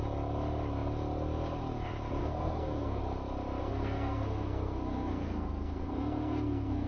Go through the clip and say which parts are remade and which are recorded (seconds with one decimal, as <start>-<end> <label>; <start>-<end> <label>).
0.0-2.2 recorded; 2.2-3.0 remade; 3.0-3.6 recorded; 3.6-6.9 remade